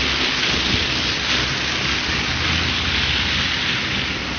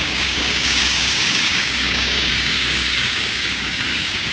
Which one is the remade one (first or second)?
second